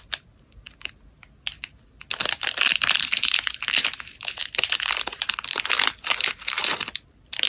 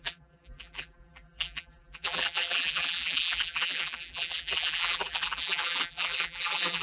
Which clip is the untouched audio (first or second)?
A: first